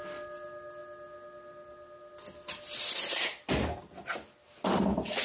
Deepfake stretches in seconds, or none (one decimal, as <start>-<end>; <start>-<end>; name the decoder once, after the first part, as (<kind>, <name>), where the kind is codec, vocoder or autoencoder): none